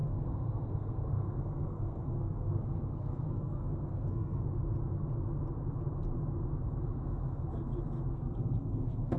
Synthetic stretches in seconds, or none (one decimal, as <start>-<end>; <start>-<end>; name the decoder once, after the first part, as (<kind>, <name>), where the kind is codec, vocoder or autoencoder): 0.0-4.4 (codec, SNAC); 8.1-9.2

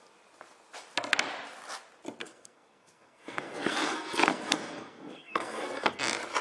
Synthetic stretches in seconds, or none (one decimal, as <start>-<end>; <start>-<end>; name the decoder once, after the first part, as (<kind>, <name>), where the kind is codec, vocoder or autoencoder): 2.2-6.0 (codec, SNAC)

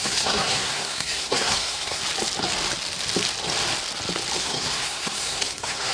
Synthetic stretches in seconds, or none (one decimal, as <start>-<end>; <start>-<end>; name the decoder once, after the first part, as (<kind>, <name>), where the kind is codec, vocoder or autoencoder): 0.0-2.0 (codec, SNAC); 4.4-5.9